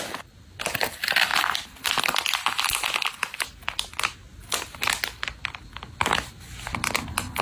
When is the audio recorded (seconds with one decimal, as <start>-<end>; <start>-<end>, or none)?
0.0-7.4